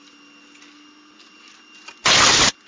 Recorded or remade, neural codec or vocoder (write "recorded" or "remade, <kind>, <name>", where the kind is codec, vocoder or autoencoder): recorded